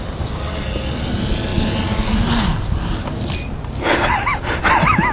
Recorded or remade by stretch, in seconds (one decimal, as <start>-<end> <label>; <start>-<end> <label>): 0.0-5.1 recorded

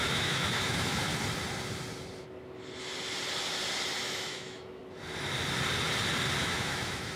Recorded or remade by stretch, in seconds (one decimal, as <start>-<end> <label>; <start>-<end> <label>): 0.0-1.1 remade; 1.1-4.0 recorded; 4.0-4.8 remade; 4.8-6.4 recorded; 6.4-7.2 remade